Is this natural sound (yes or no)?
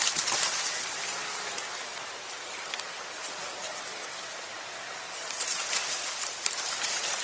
no